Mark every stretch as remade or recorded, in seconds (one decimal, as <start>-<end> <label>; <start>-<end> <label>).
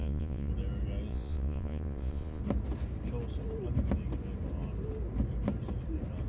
0.0-0.5 remade; 0.5-1.1 recorded; 1.1-2.4 remade; 2.4-6.3 recorded